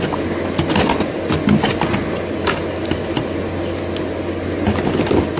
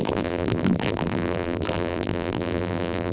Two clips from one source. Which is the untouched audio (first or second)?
first